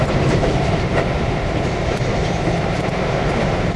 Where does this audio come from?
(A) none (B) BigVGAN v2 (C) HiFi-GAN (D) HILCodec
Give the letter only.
B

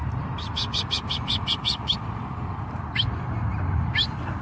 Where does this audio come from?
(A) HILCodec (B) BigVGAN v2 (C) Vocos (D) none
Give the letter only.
D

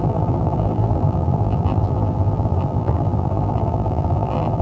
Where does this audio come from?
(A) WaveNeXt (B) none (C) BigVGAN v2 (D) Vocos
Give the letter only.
C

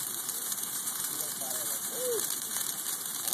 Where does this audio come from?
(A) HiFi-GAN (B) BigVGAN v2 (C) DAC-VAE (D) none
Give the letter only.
B